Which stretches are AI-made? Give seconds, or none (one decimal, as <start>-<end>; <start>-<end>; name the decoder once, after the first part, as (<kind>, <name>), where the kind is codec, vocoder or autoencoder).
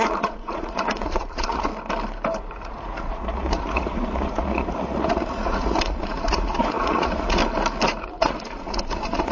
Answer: 0.0-1.7 (vocoder, Vocos); 2.4-7.4; 8.0-9.3